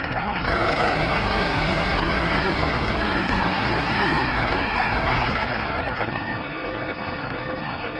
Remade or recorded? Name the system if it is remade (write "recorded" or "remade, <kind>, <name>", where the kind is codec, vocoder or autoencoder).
remade, codec, SNAC